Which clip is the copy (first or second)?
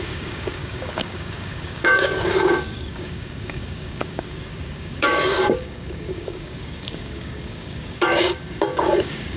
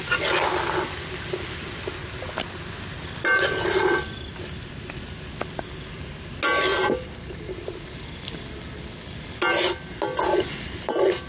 first